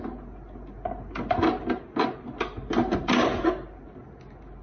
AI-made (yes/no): no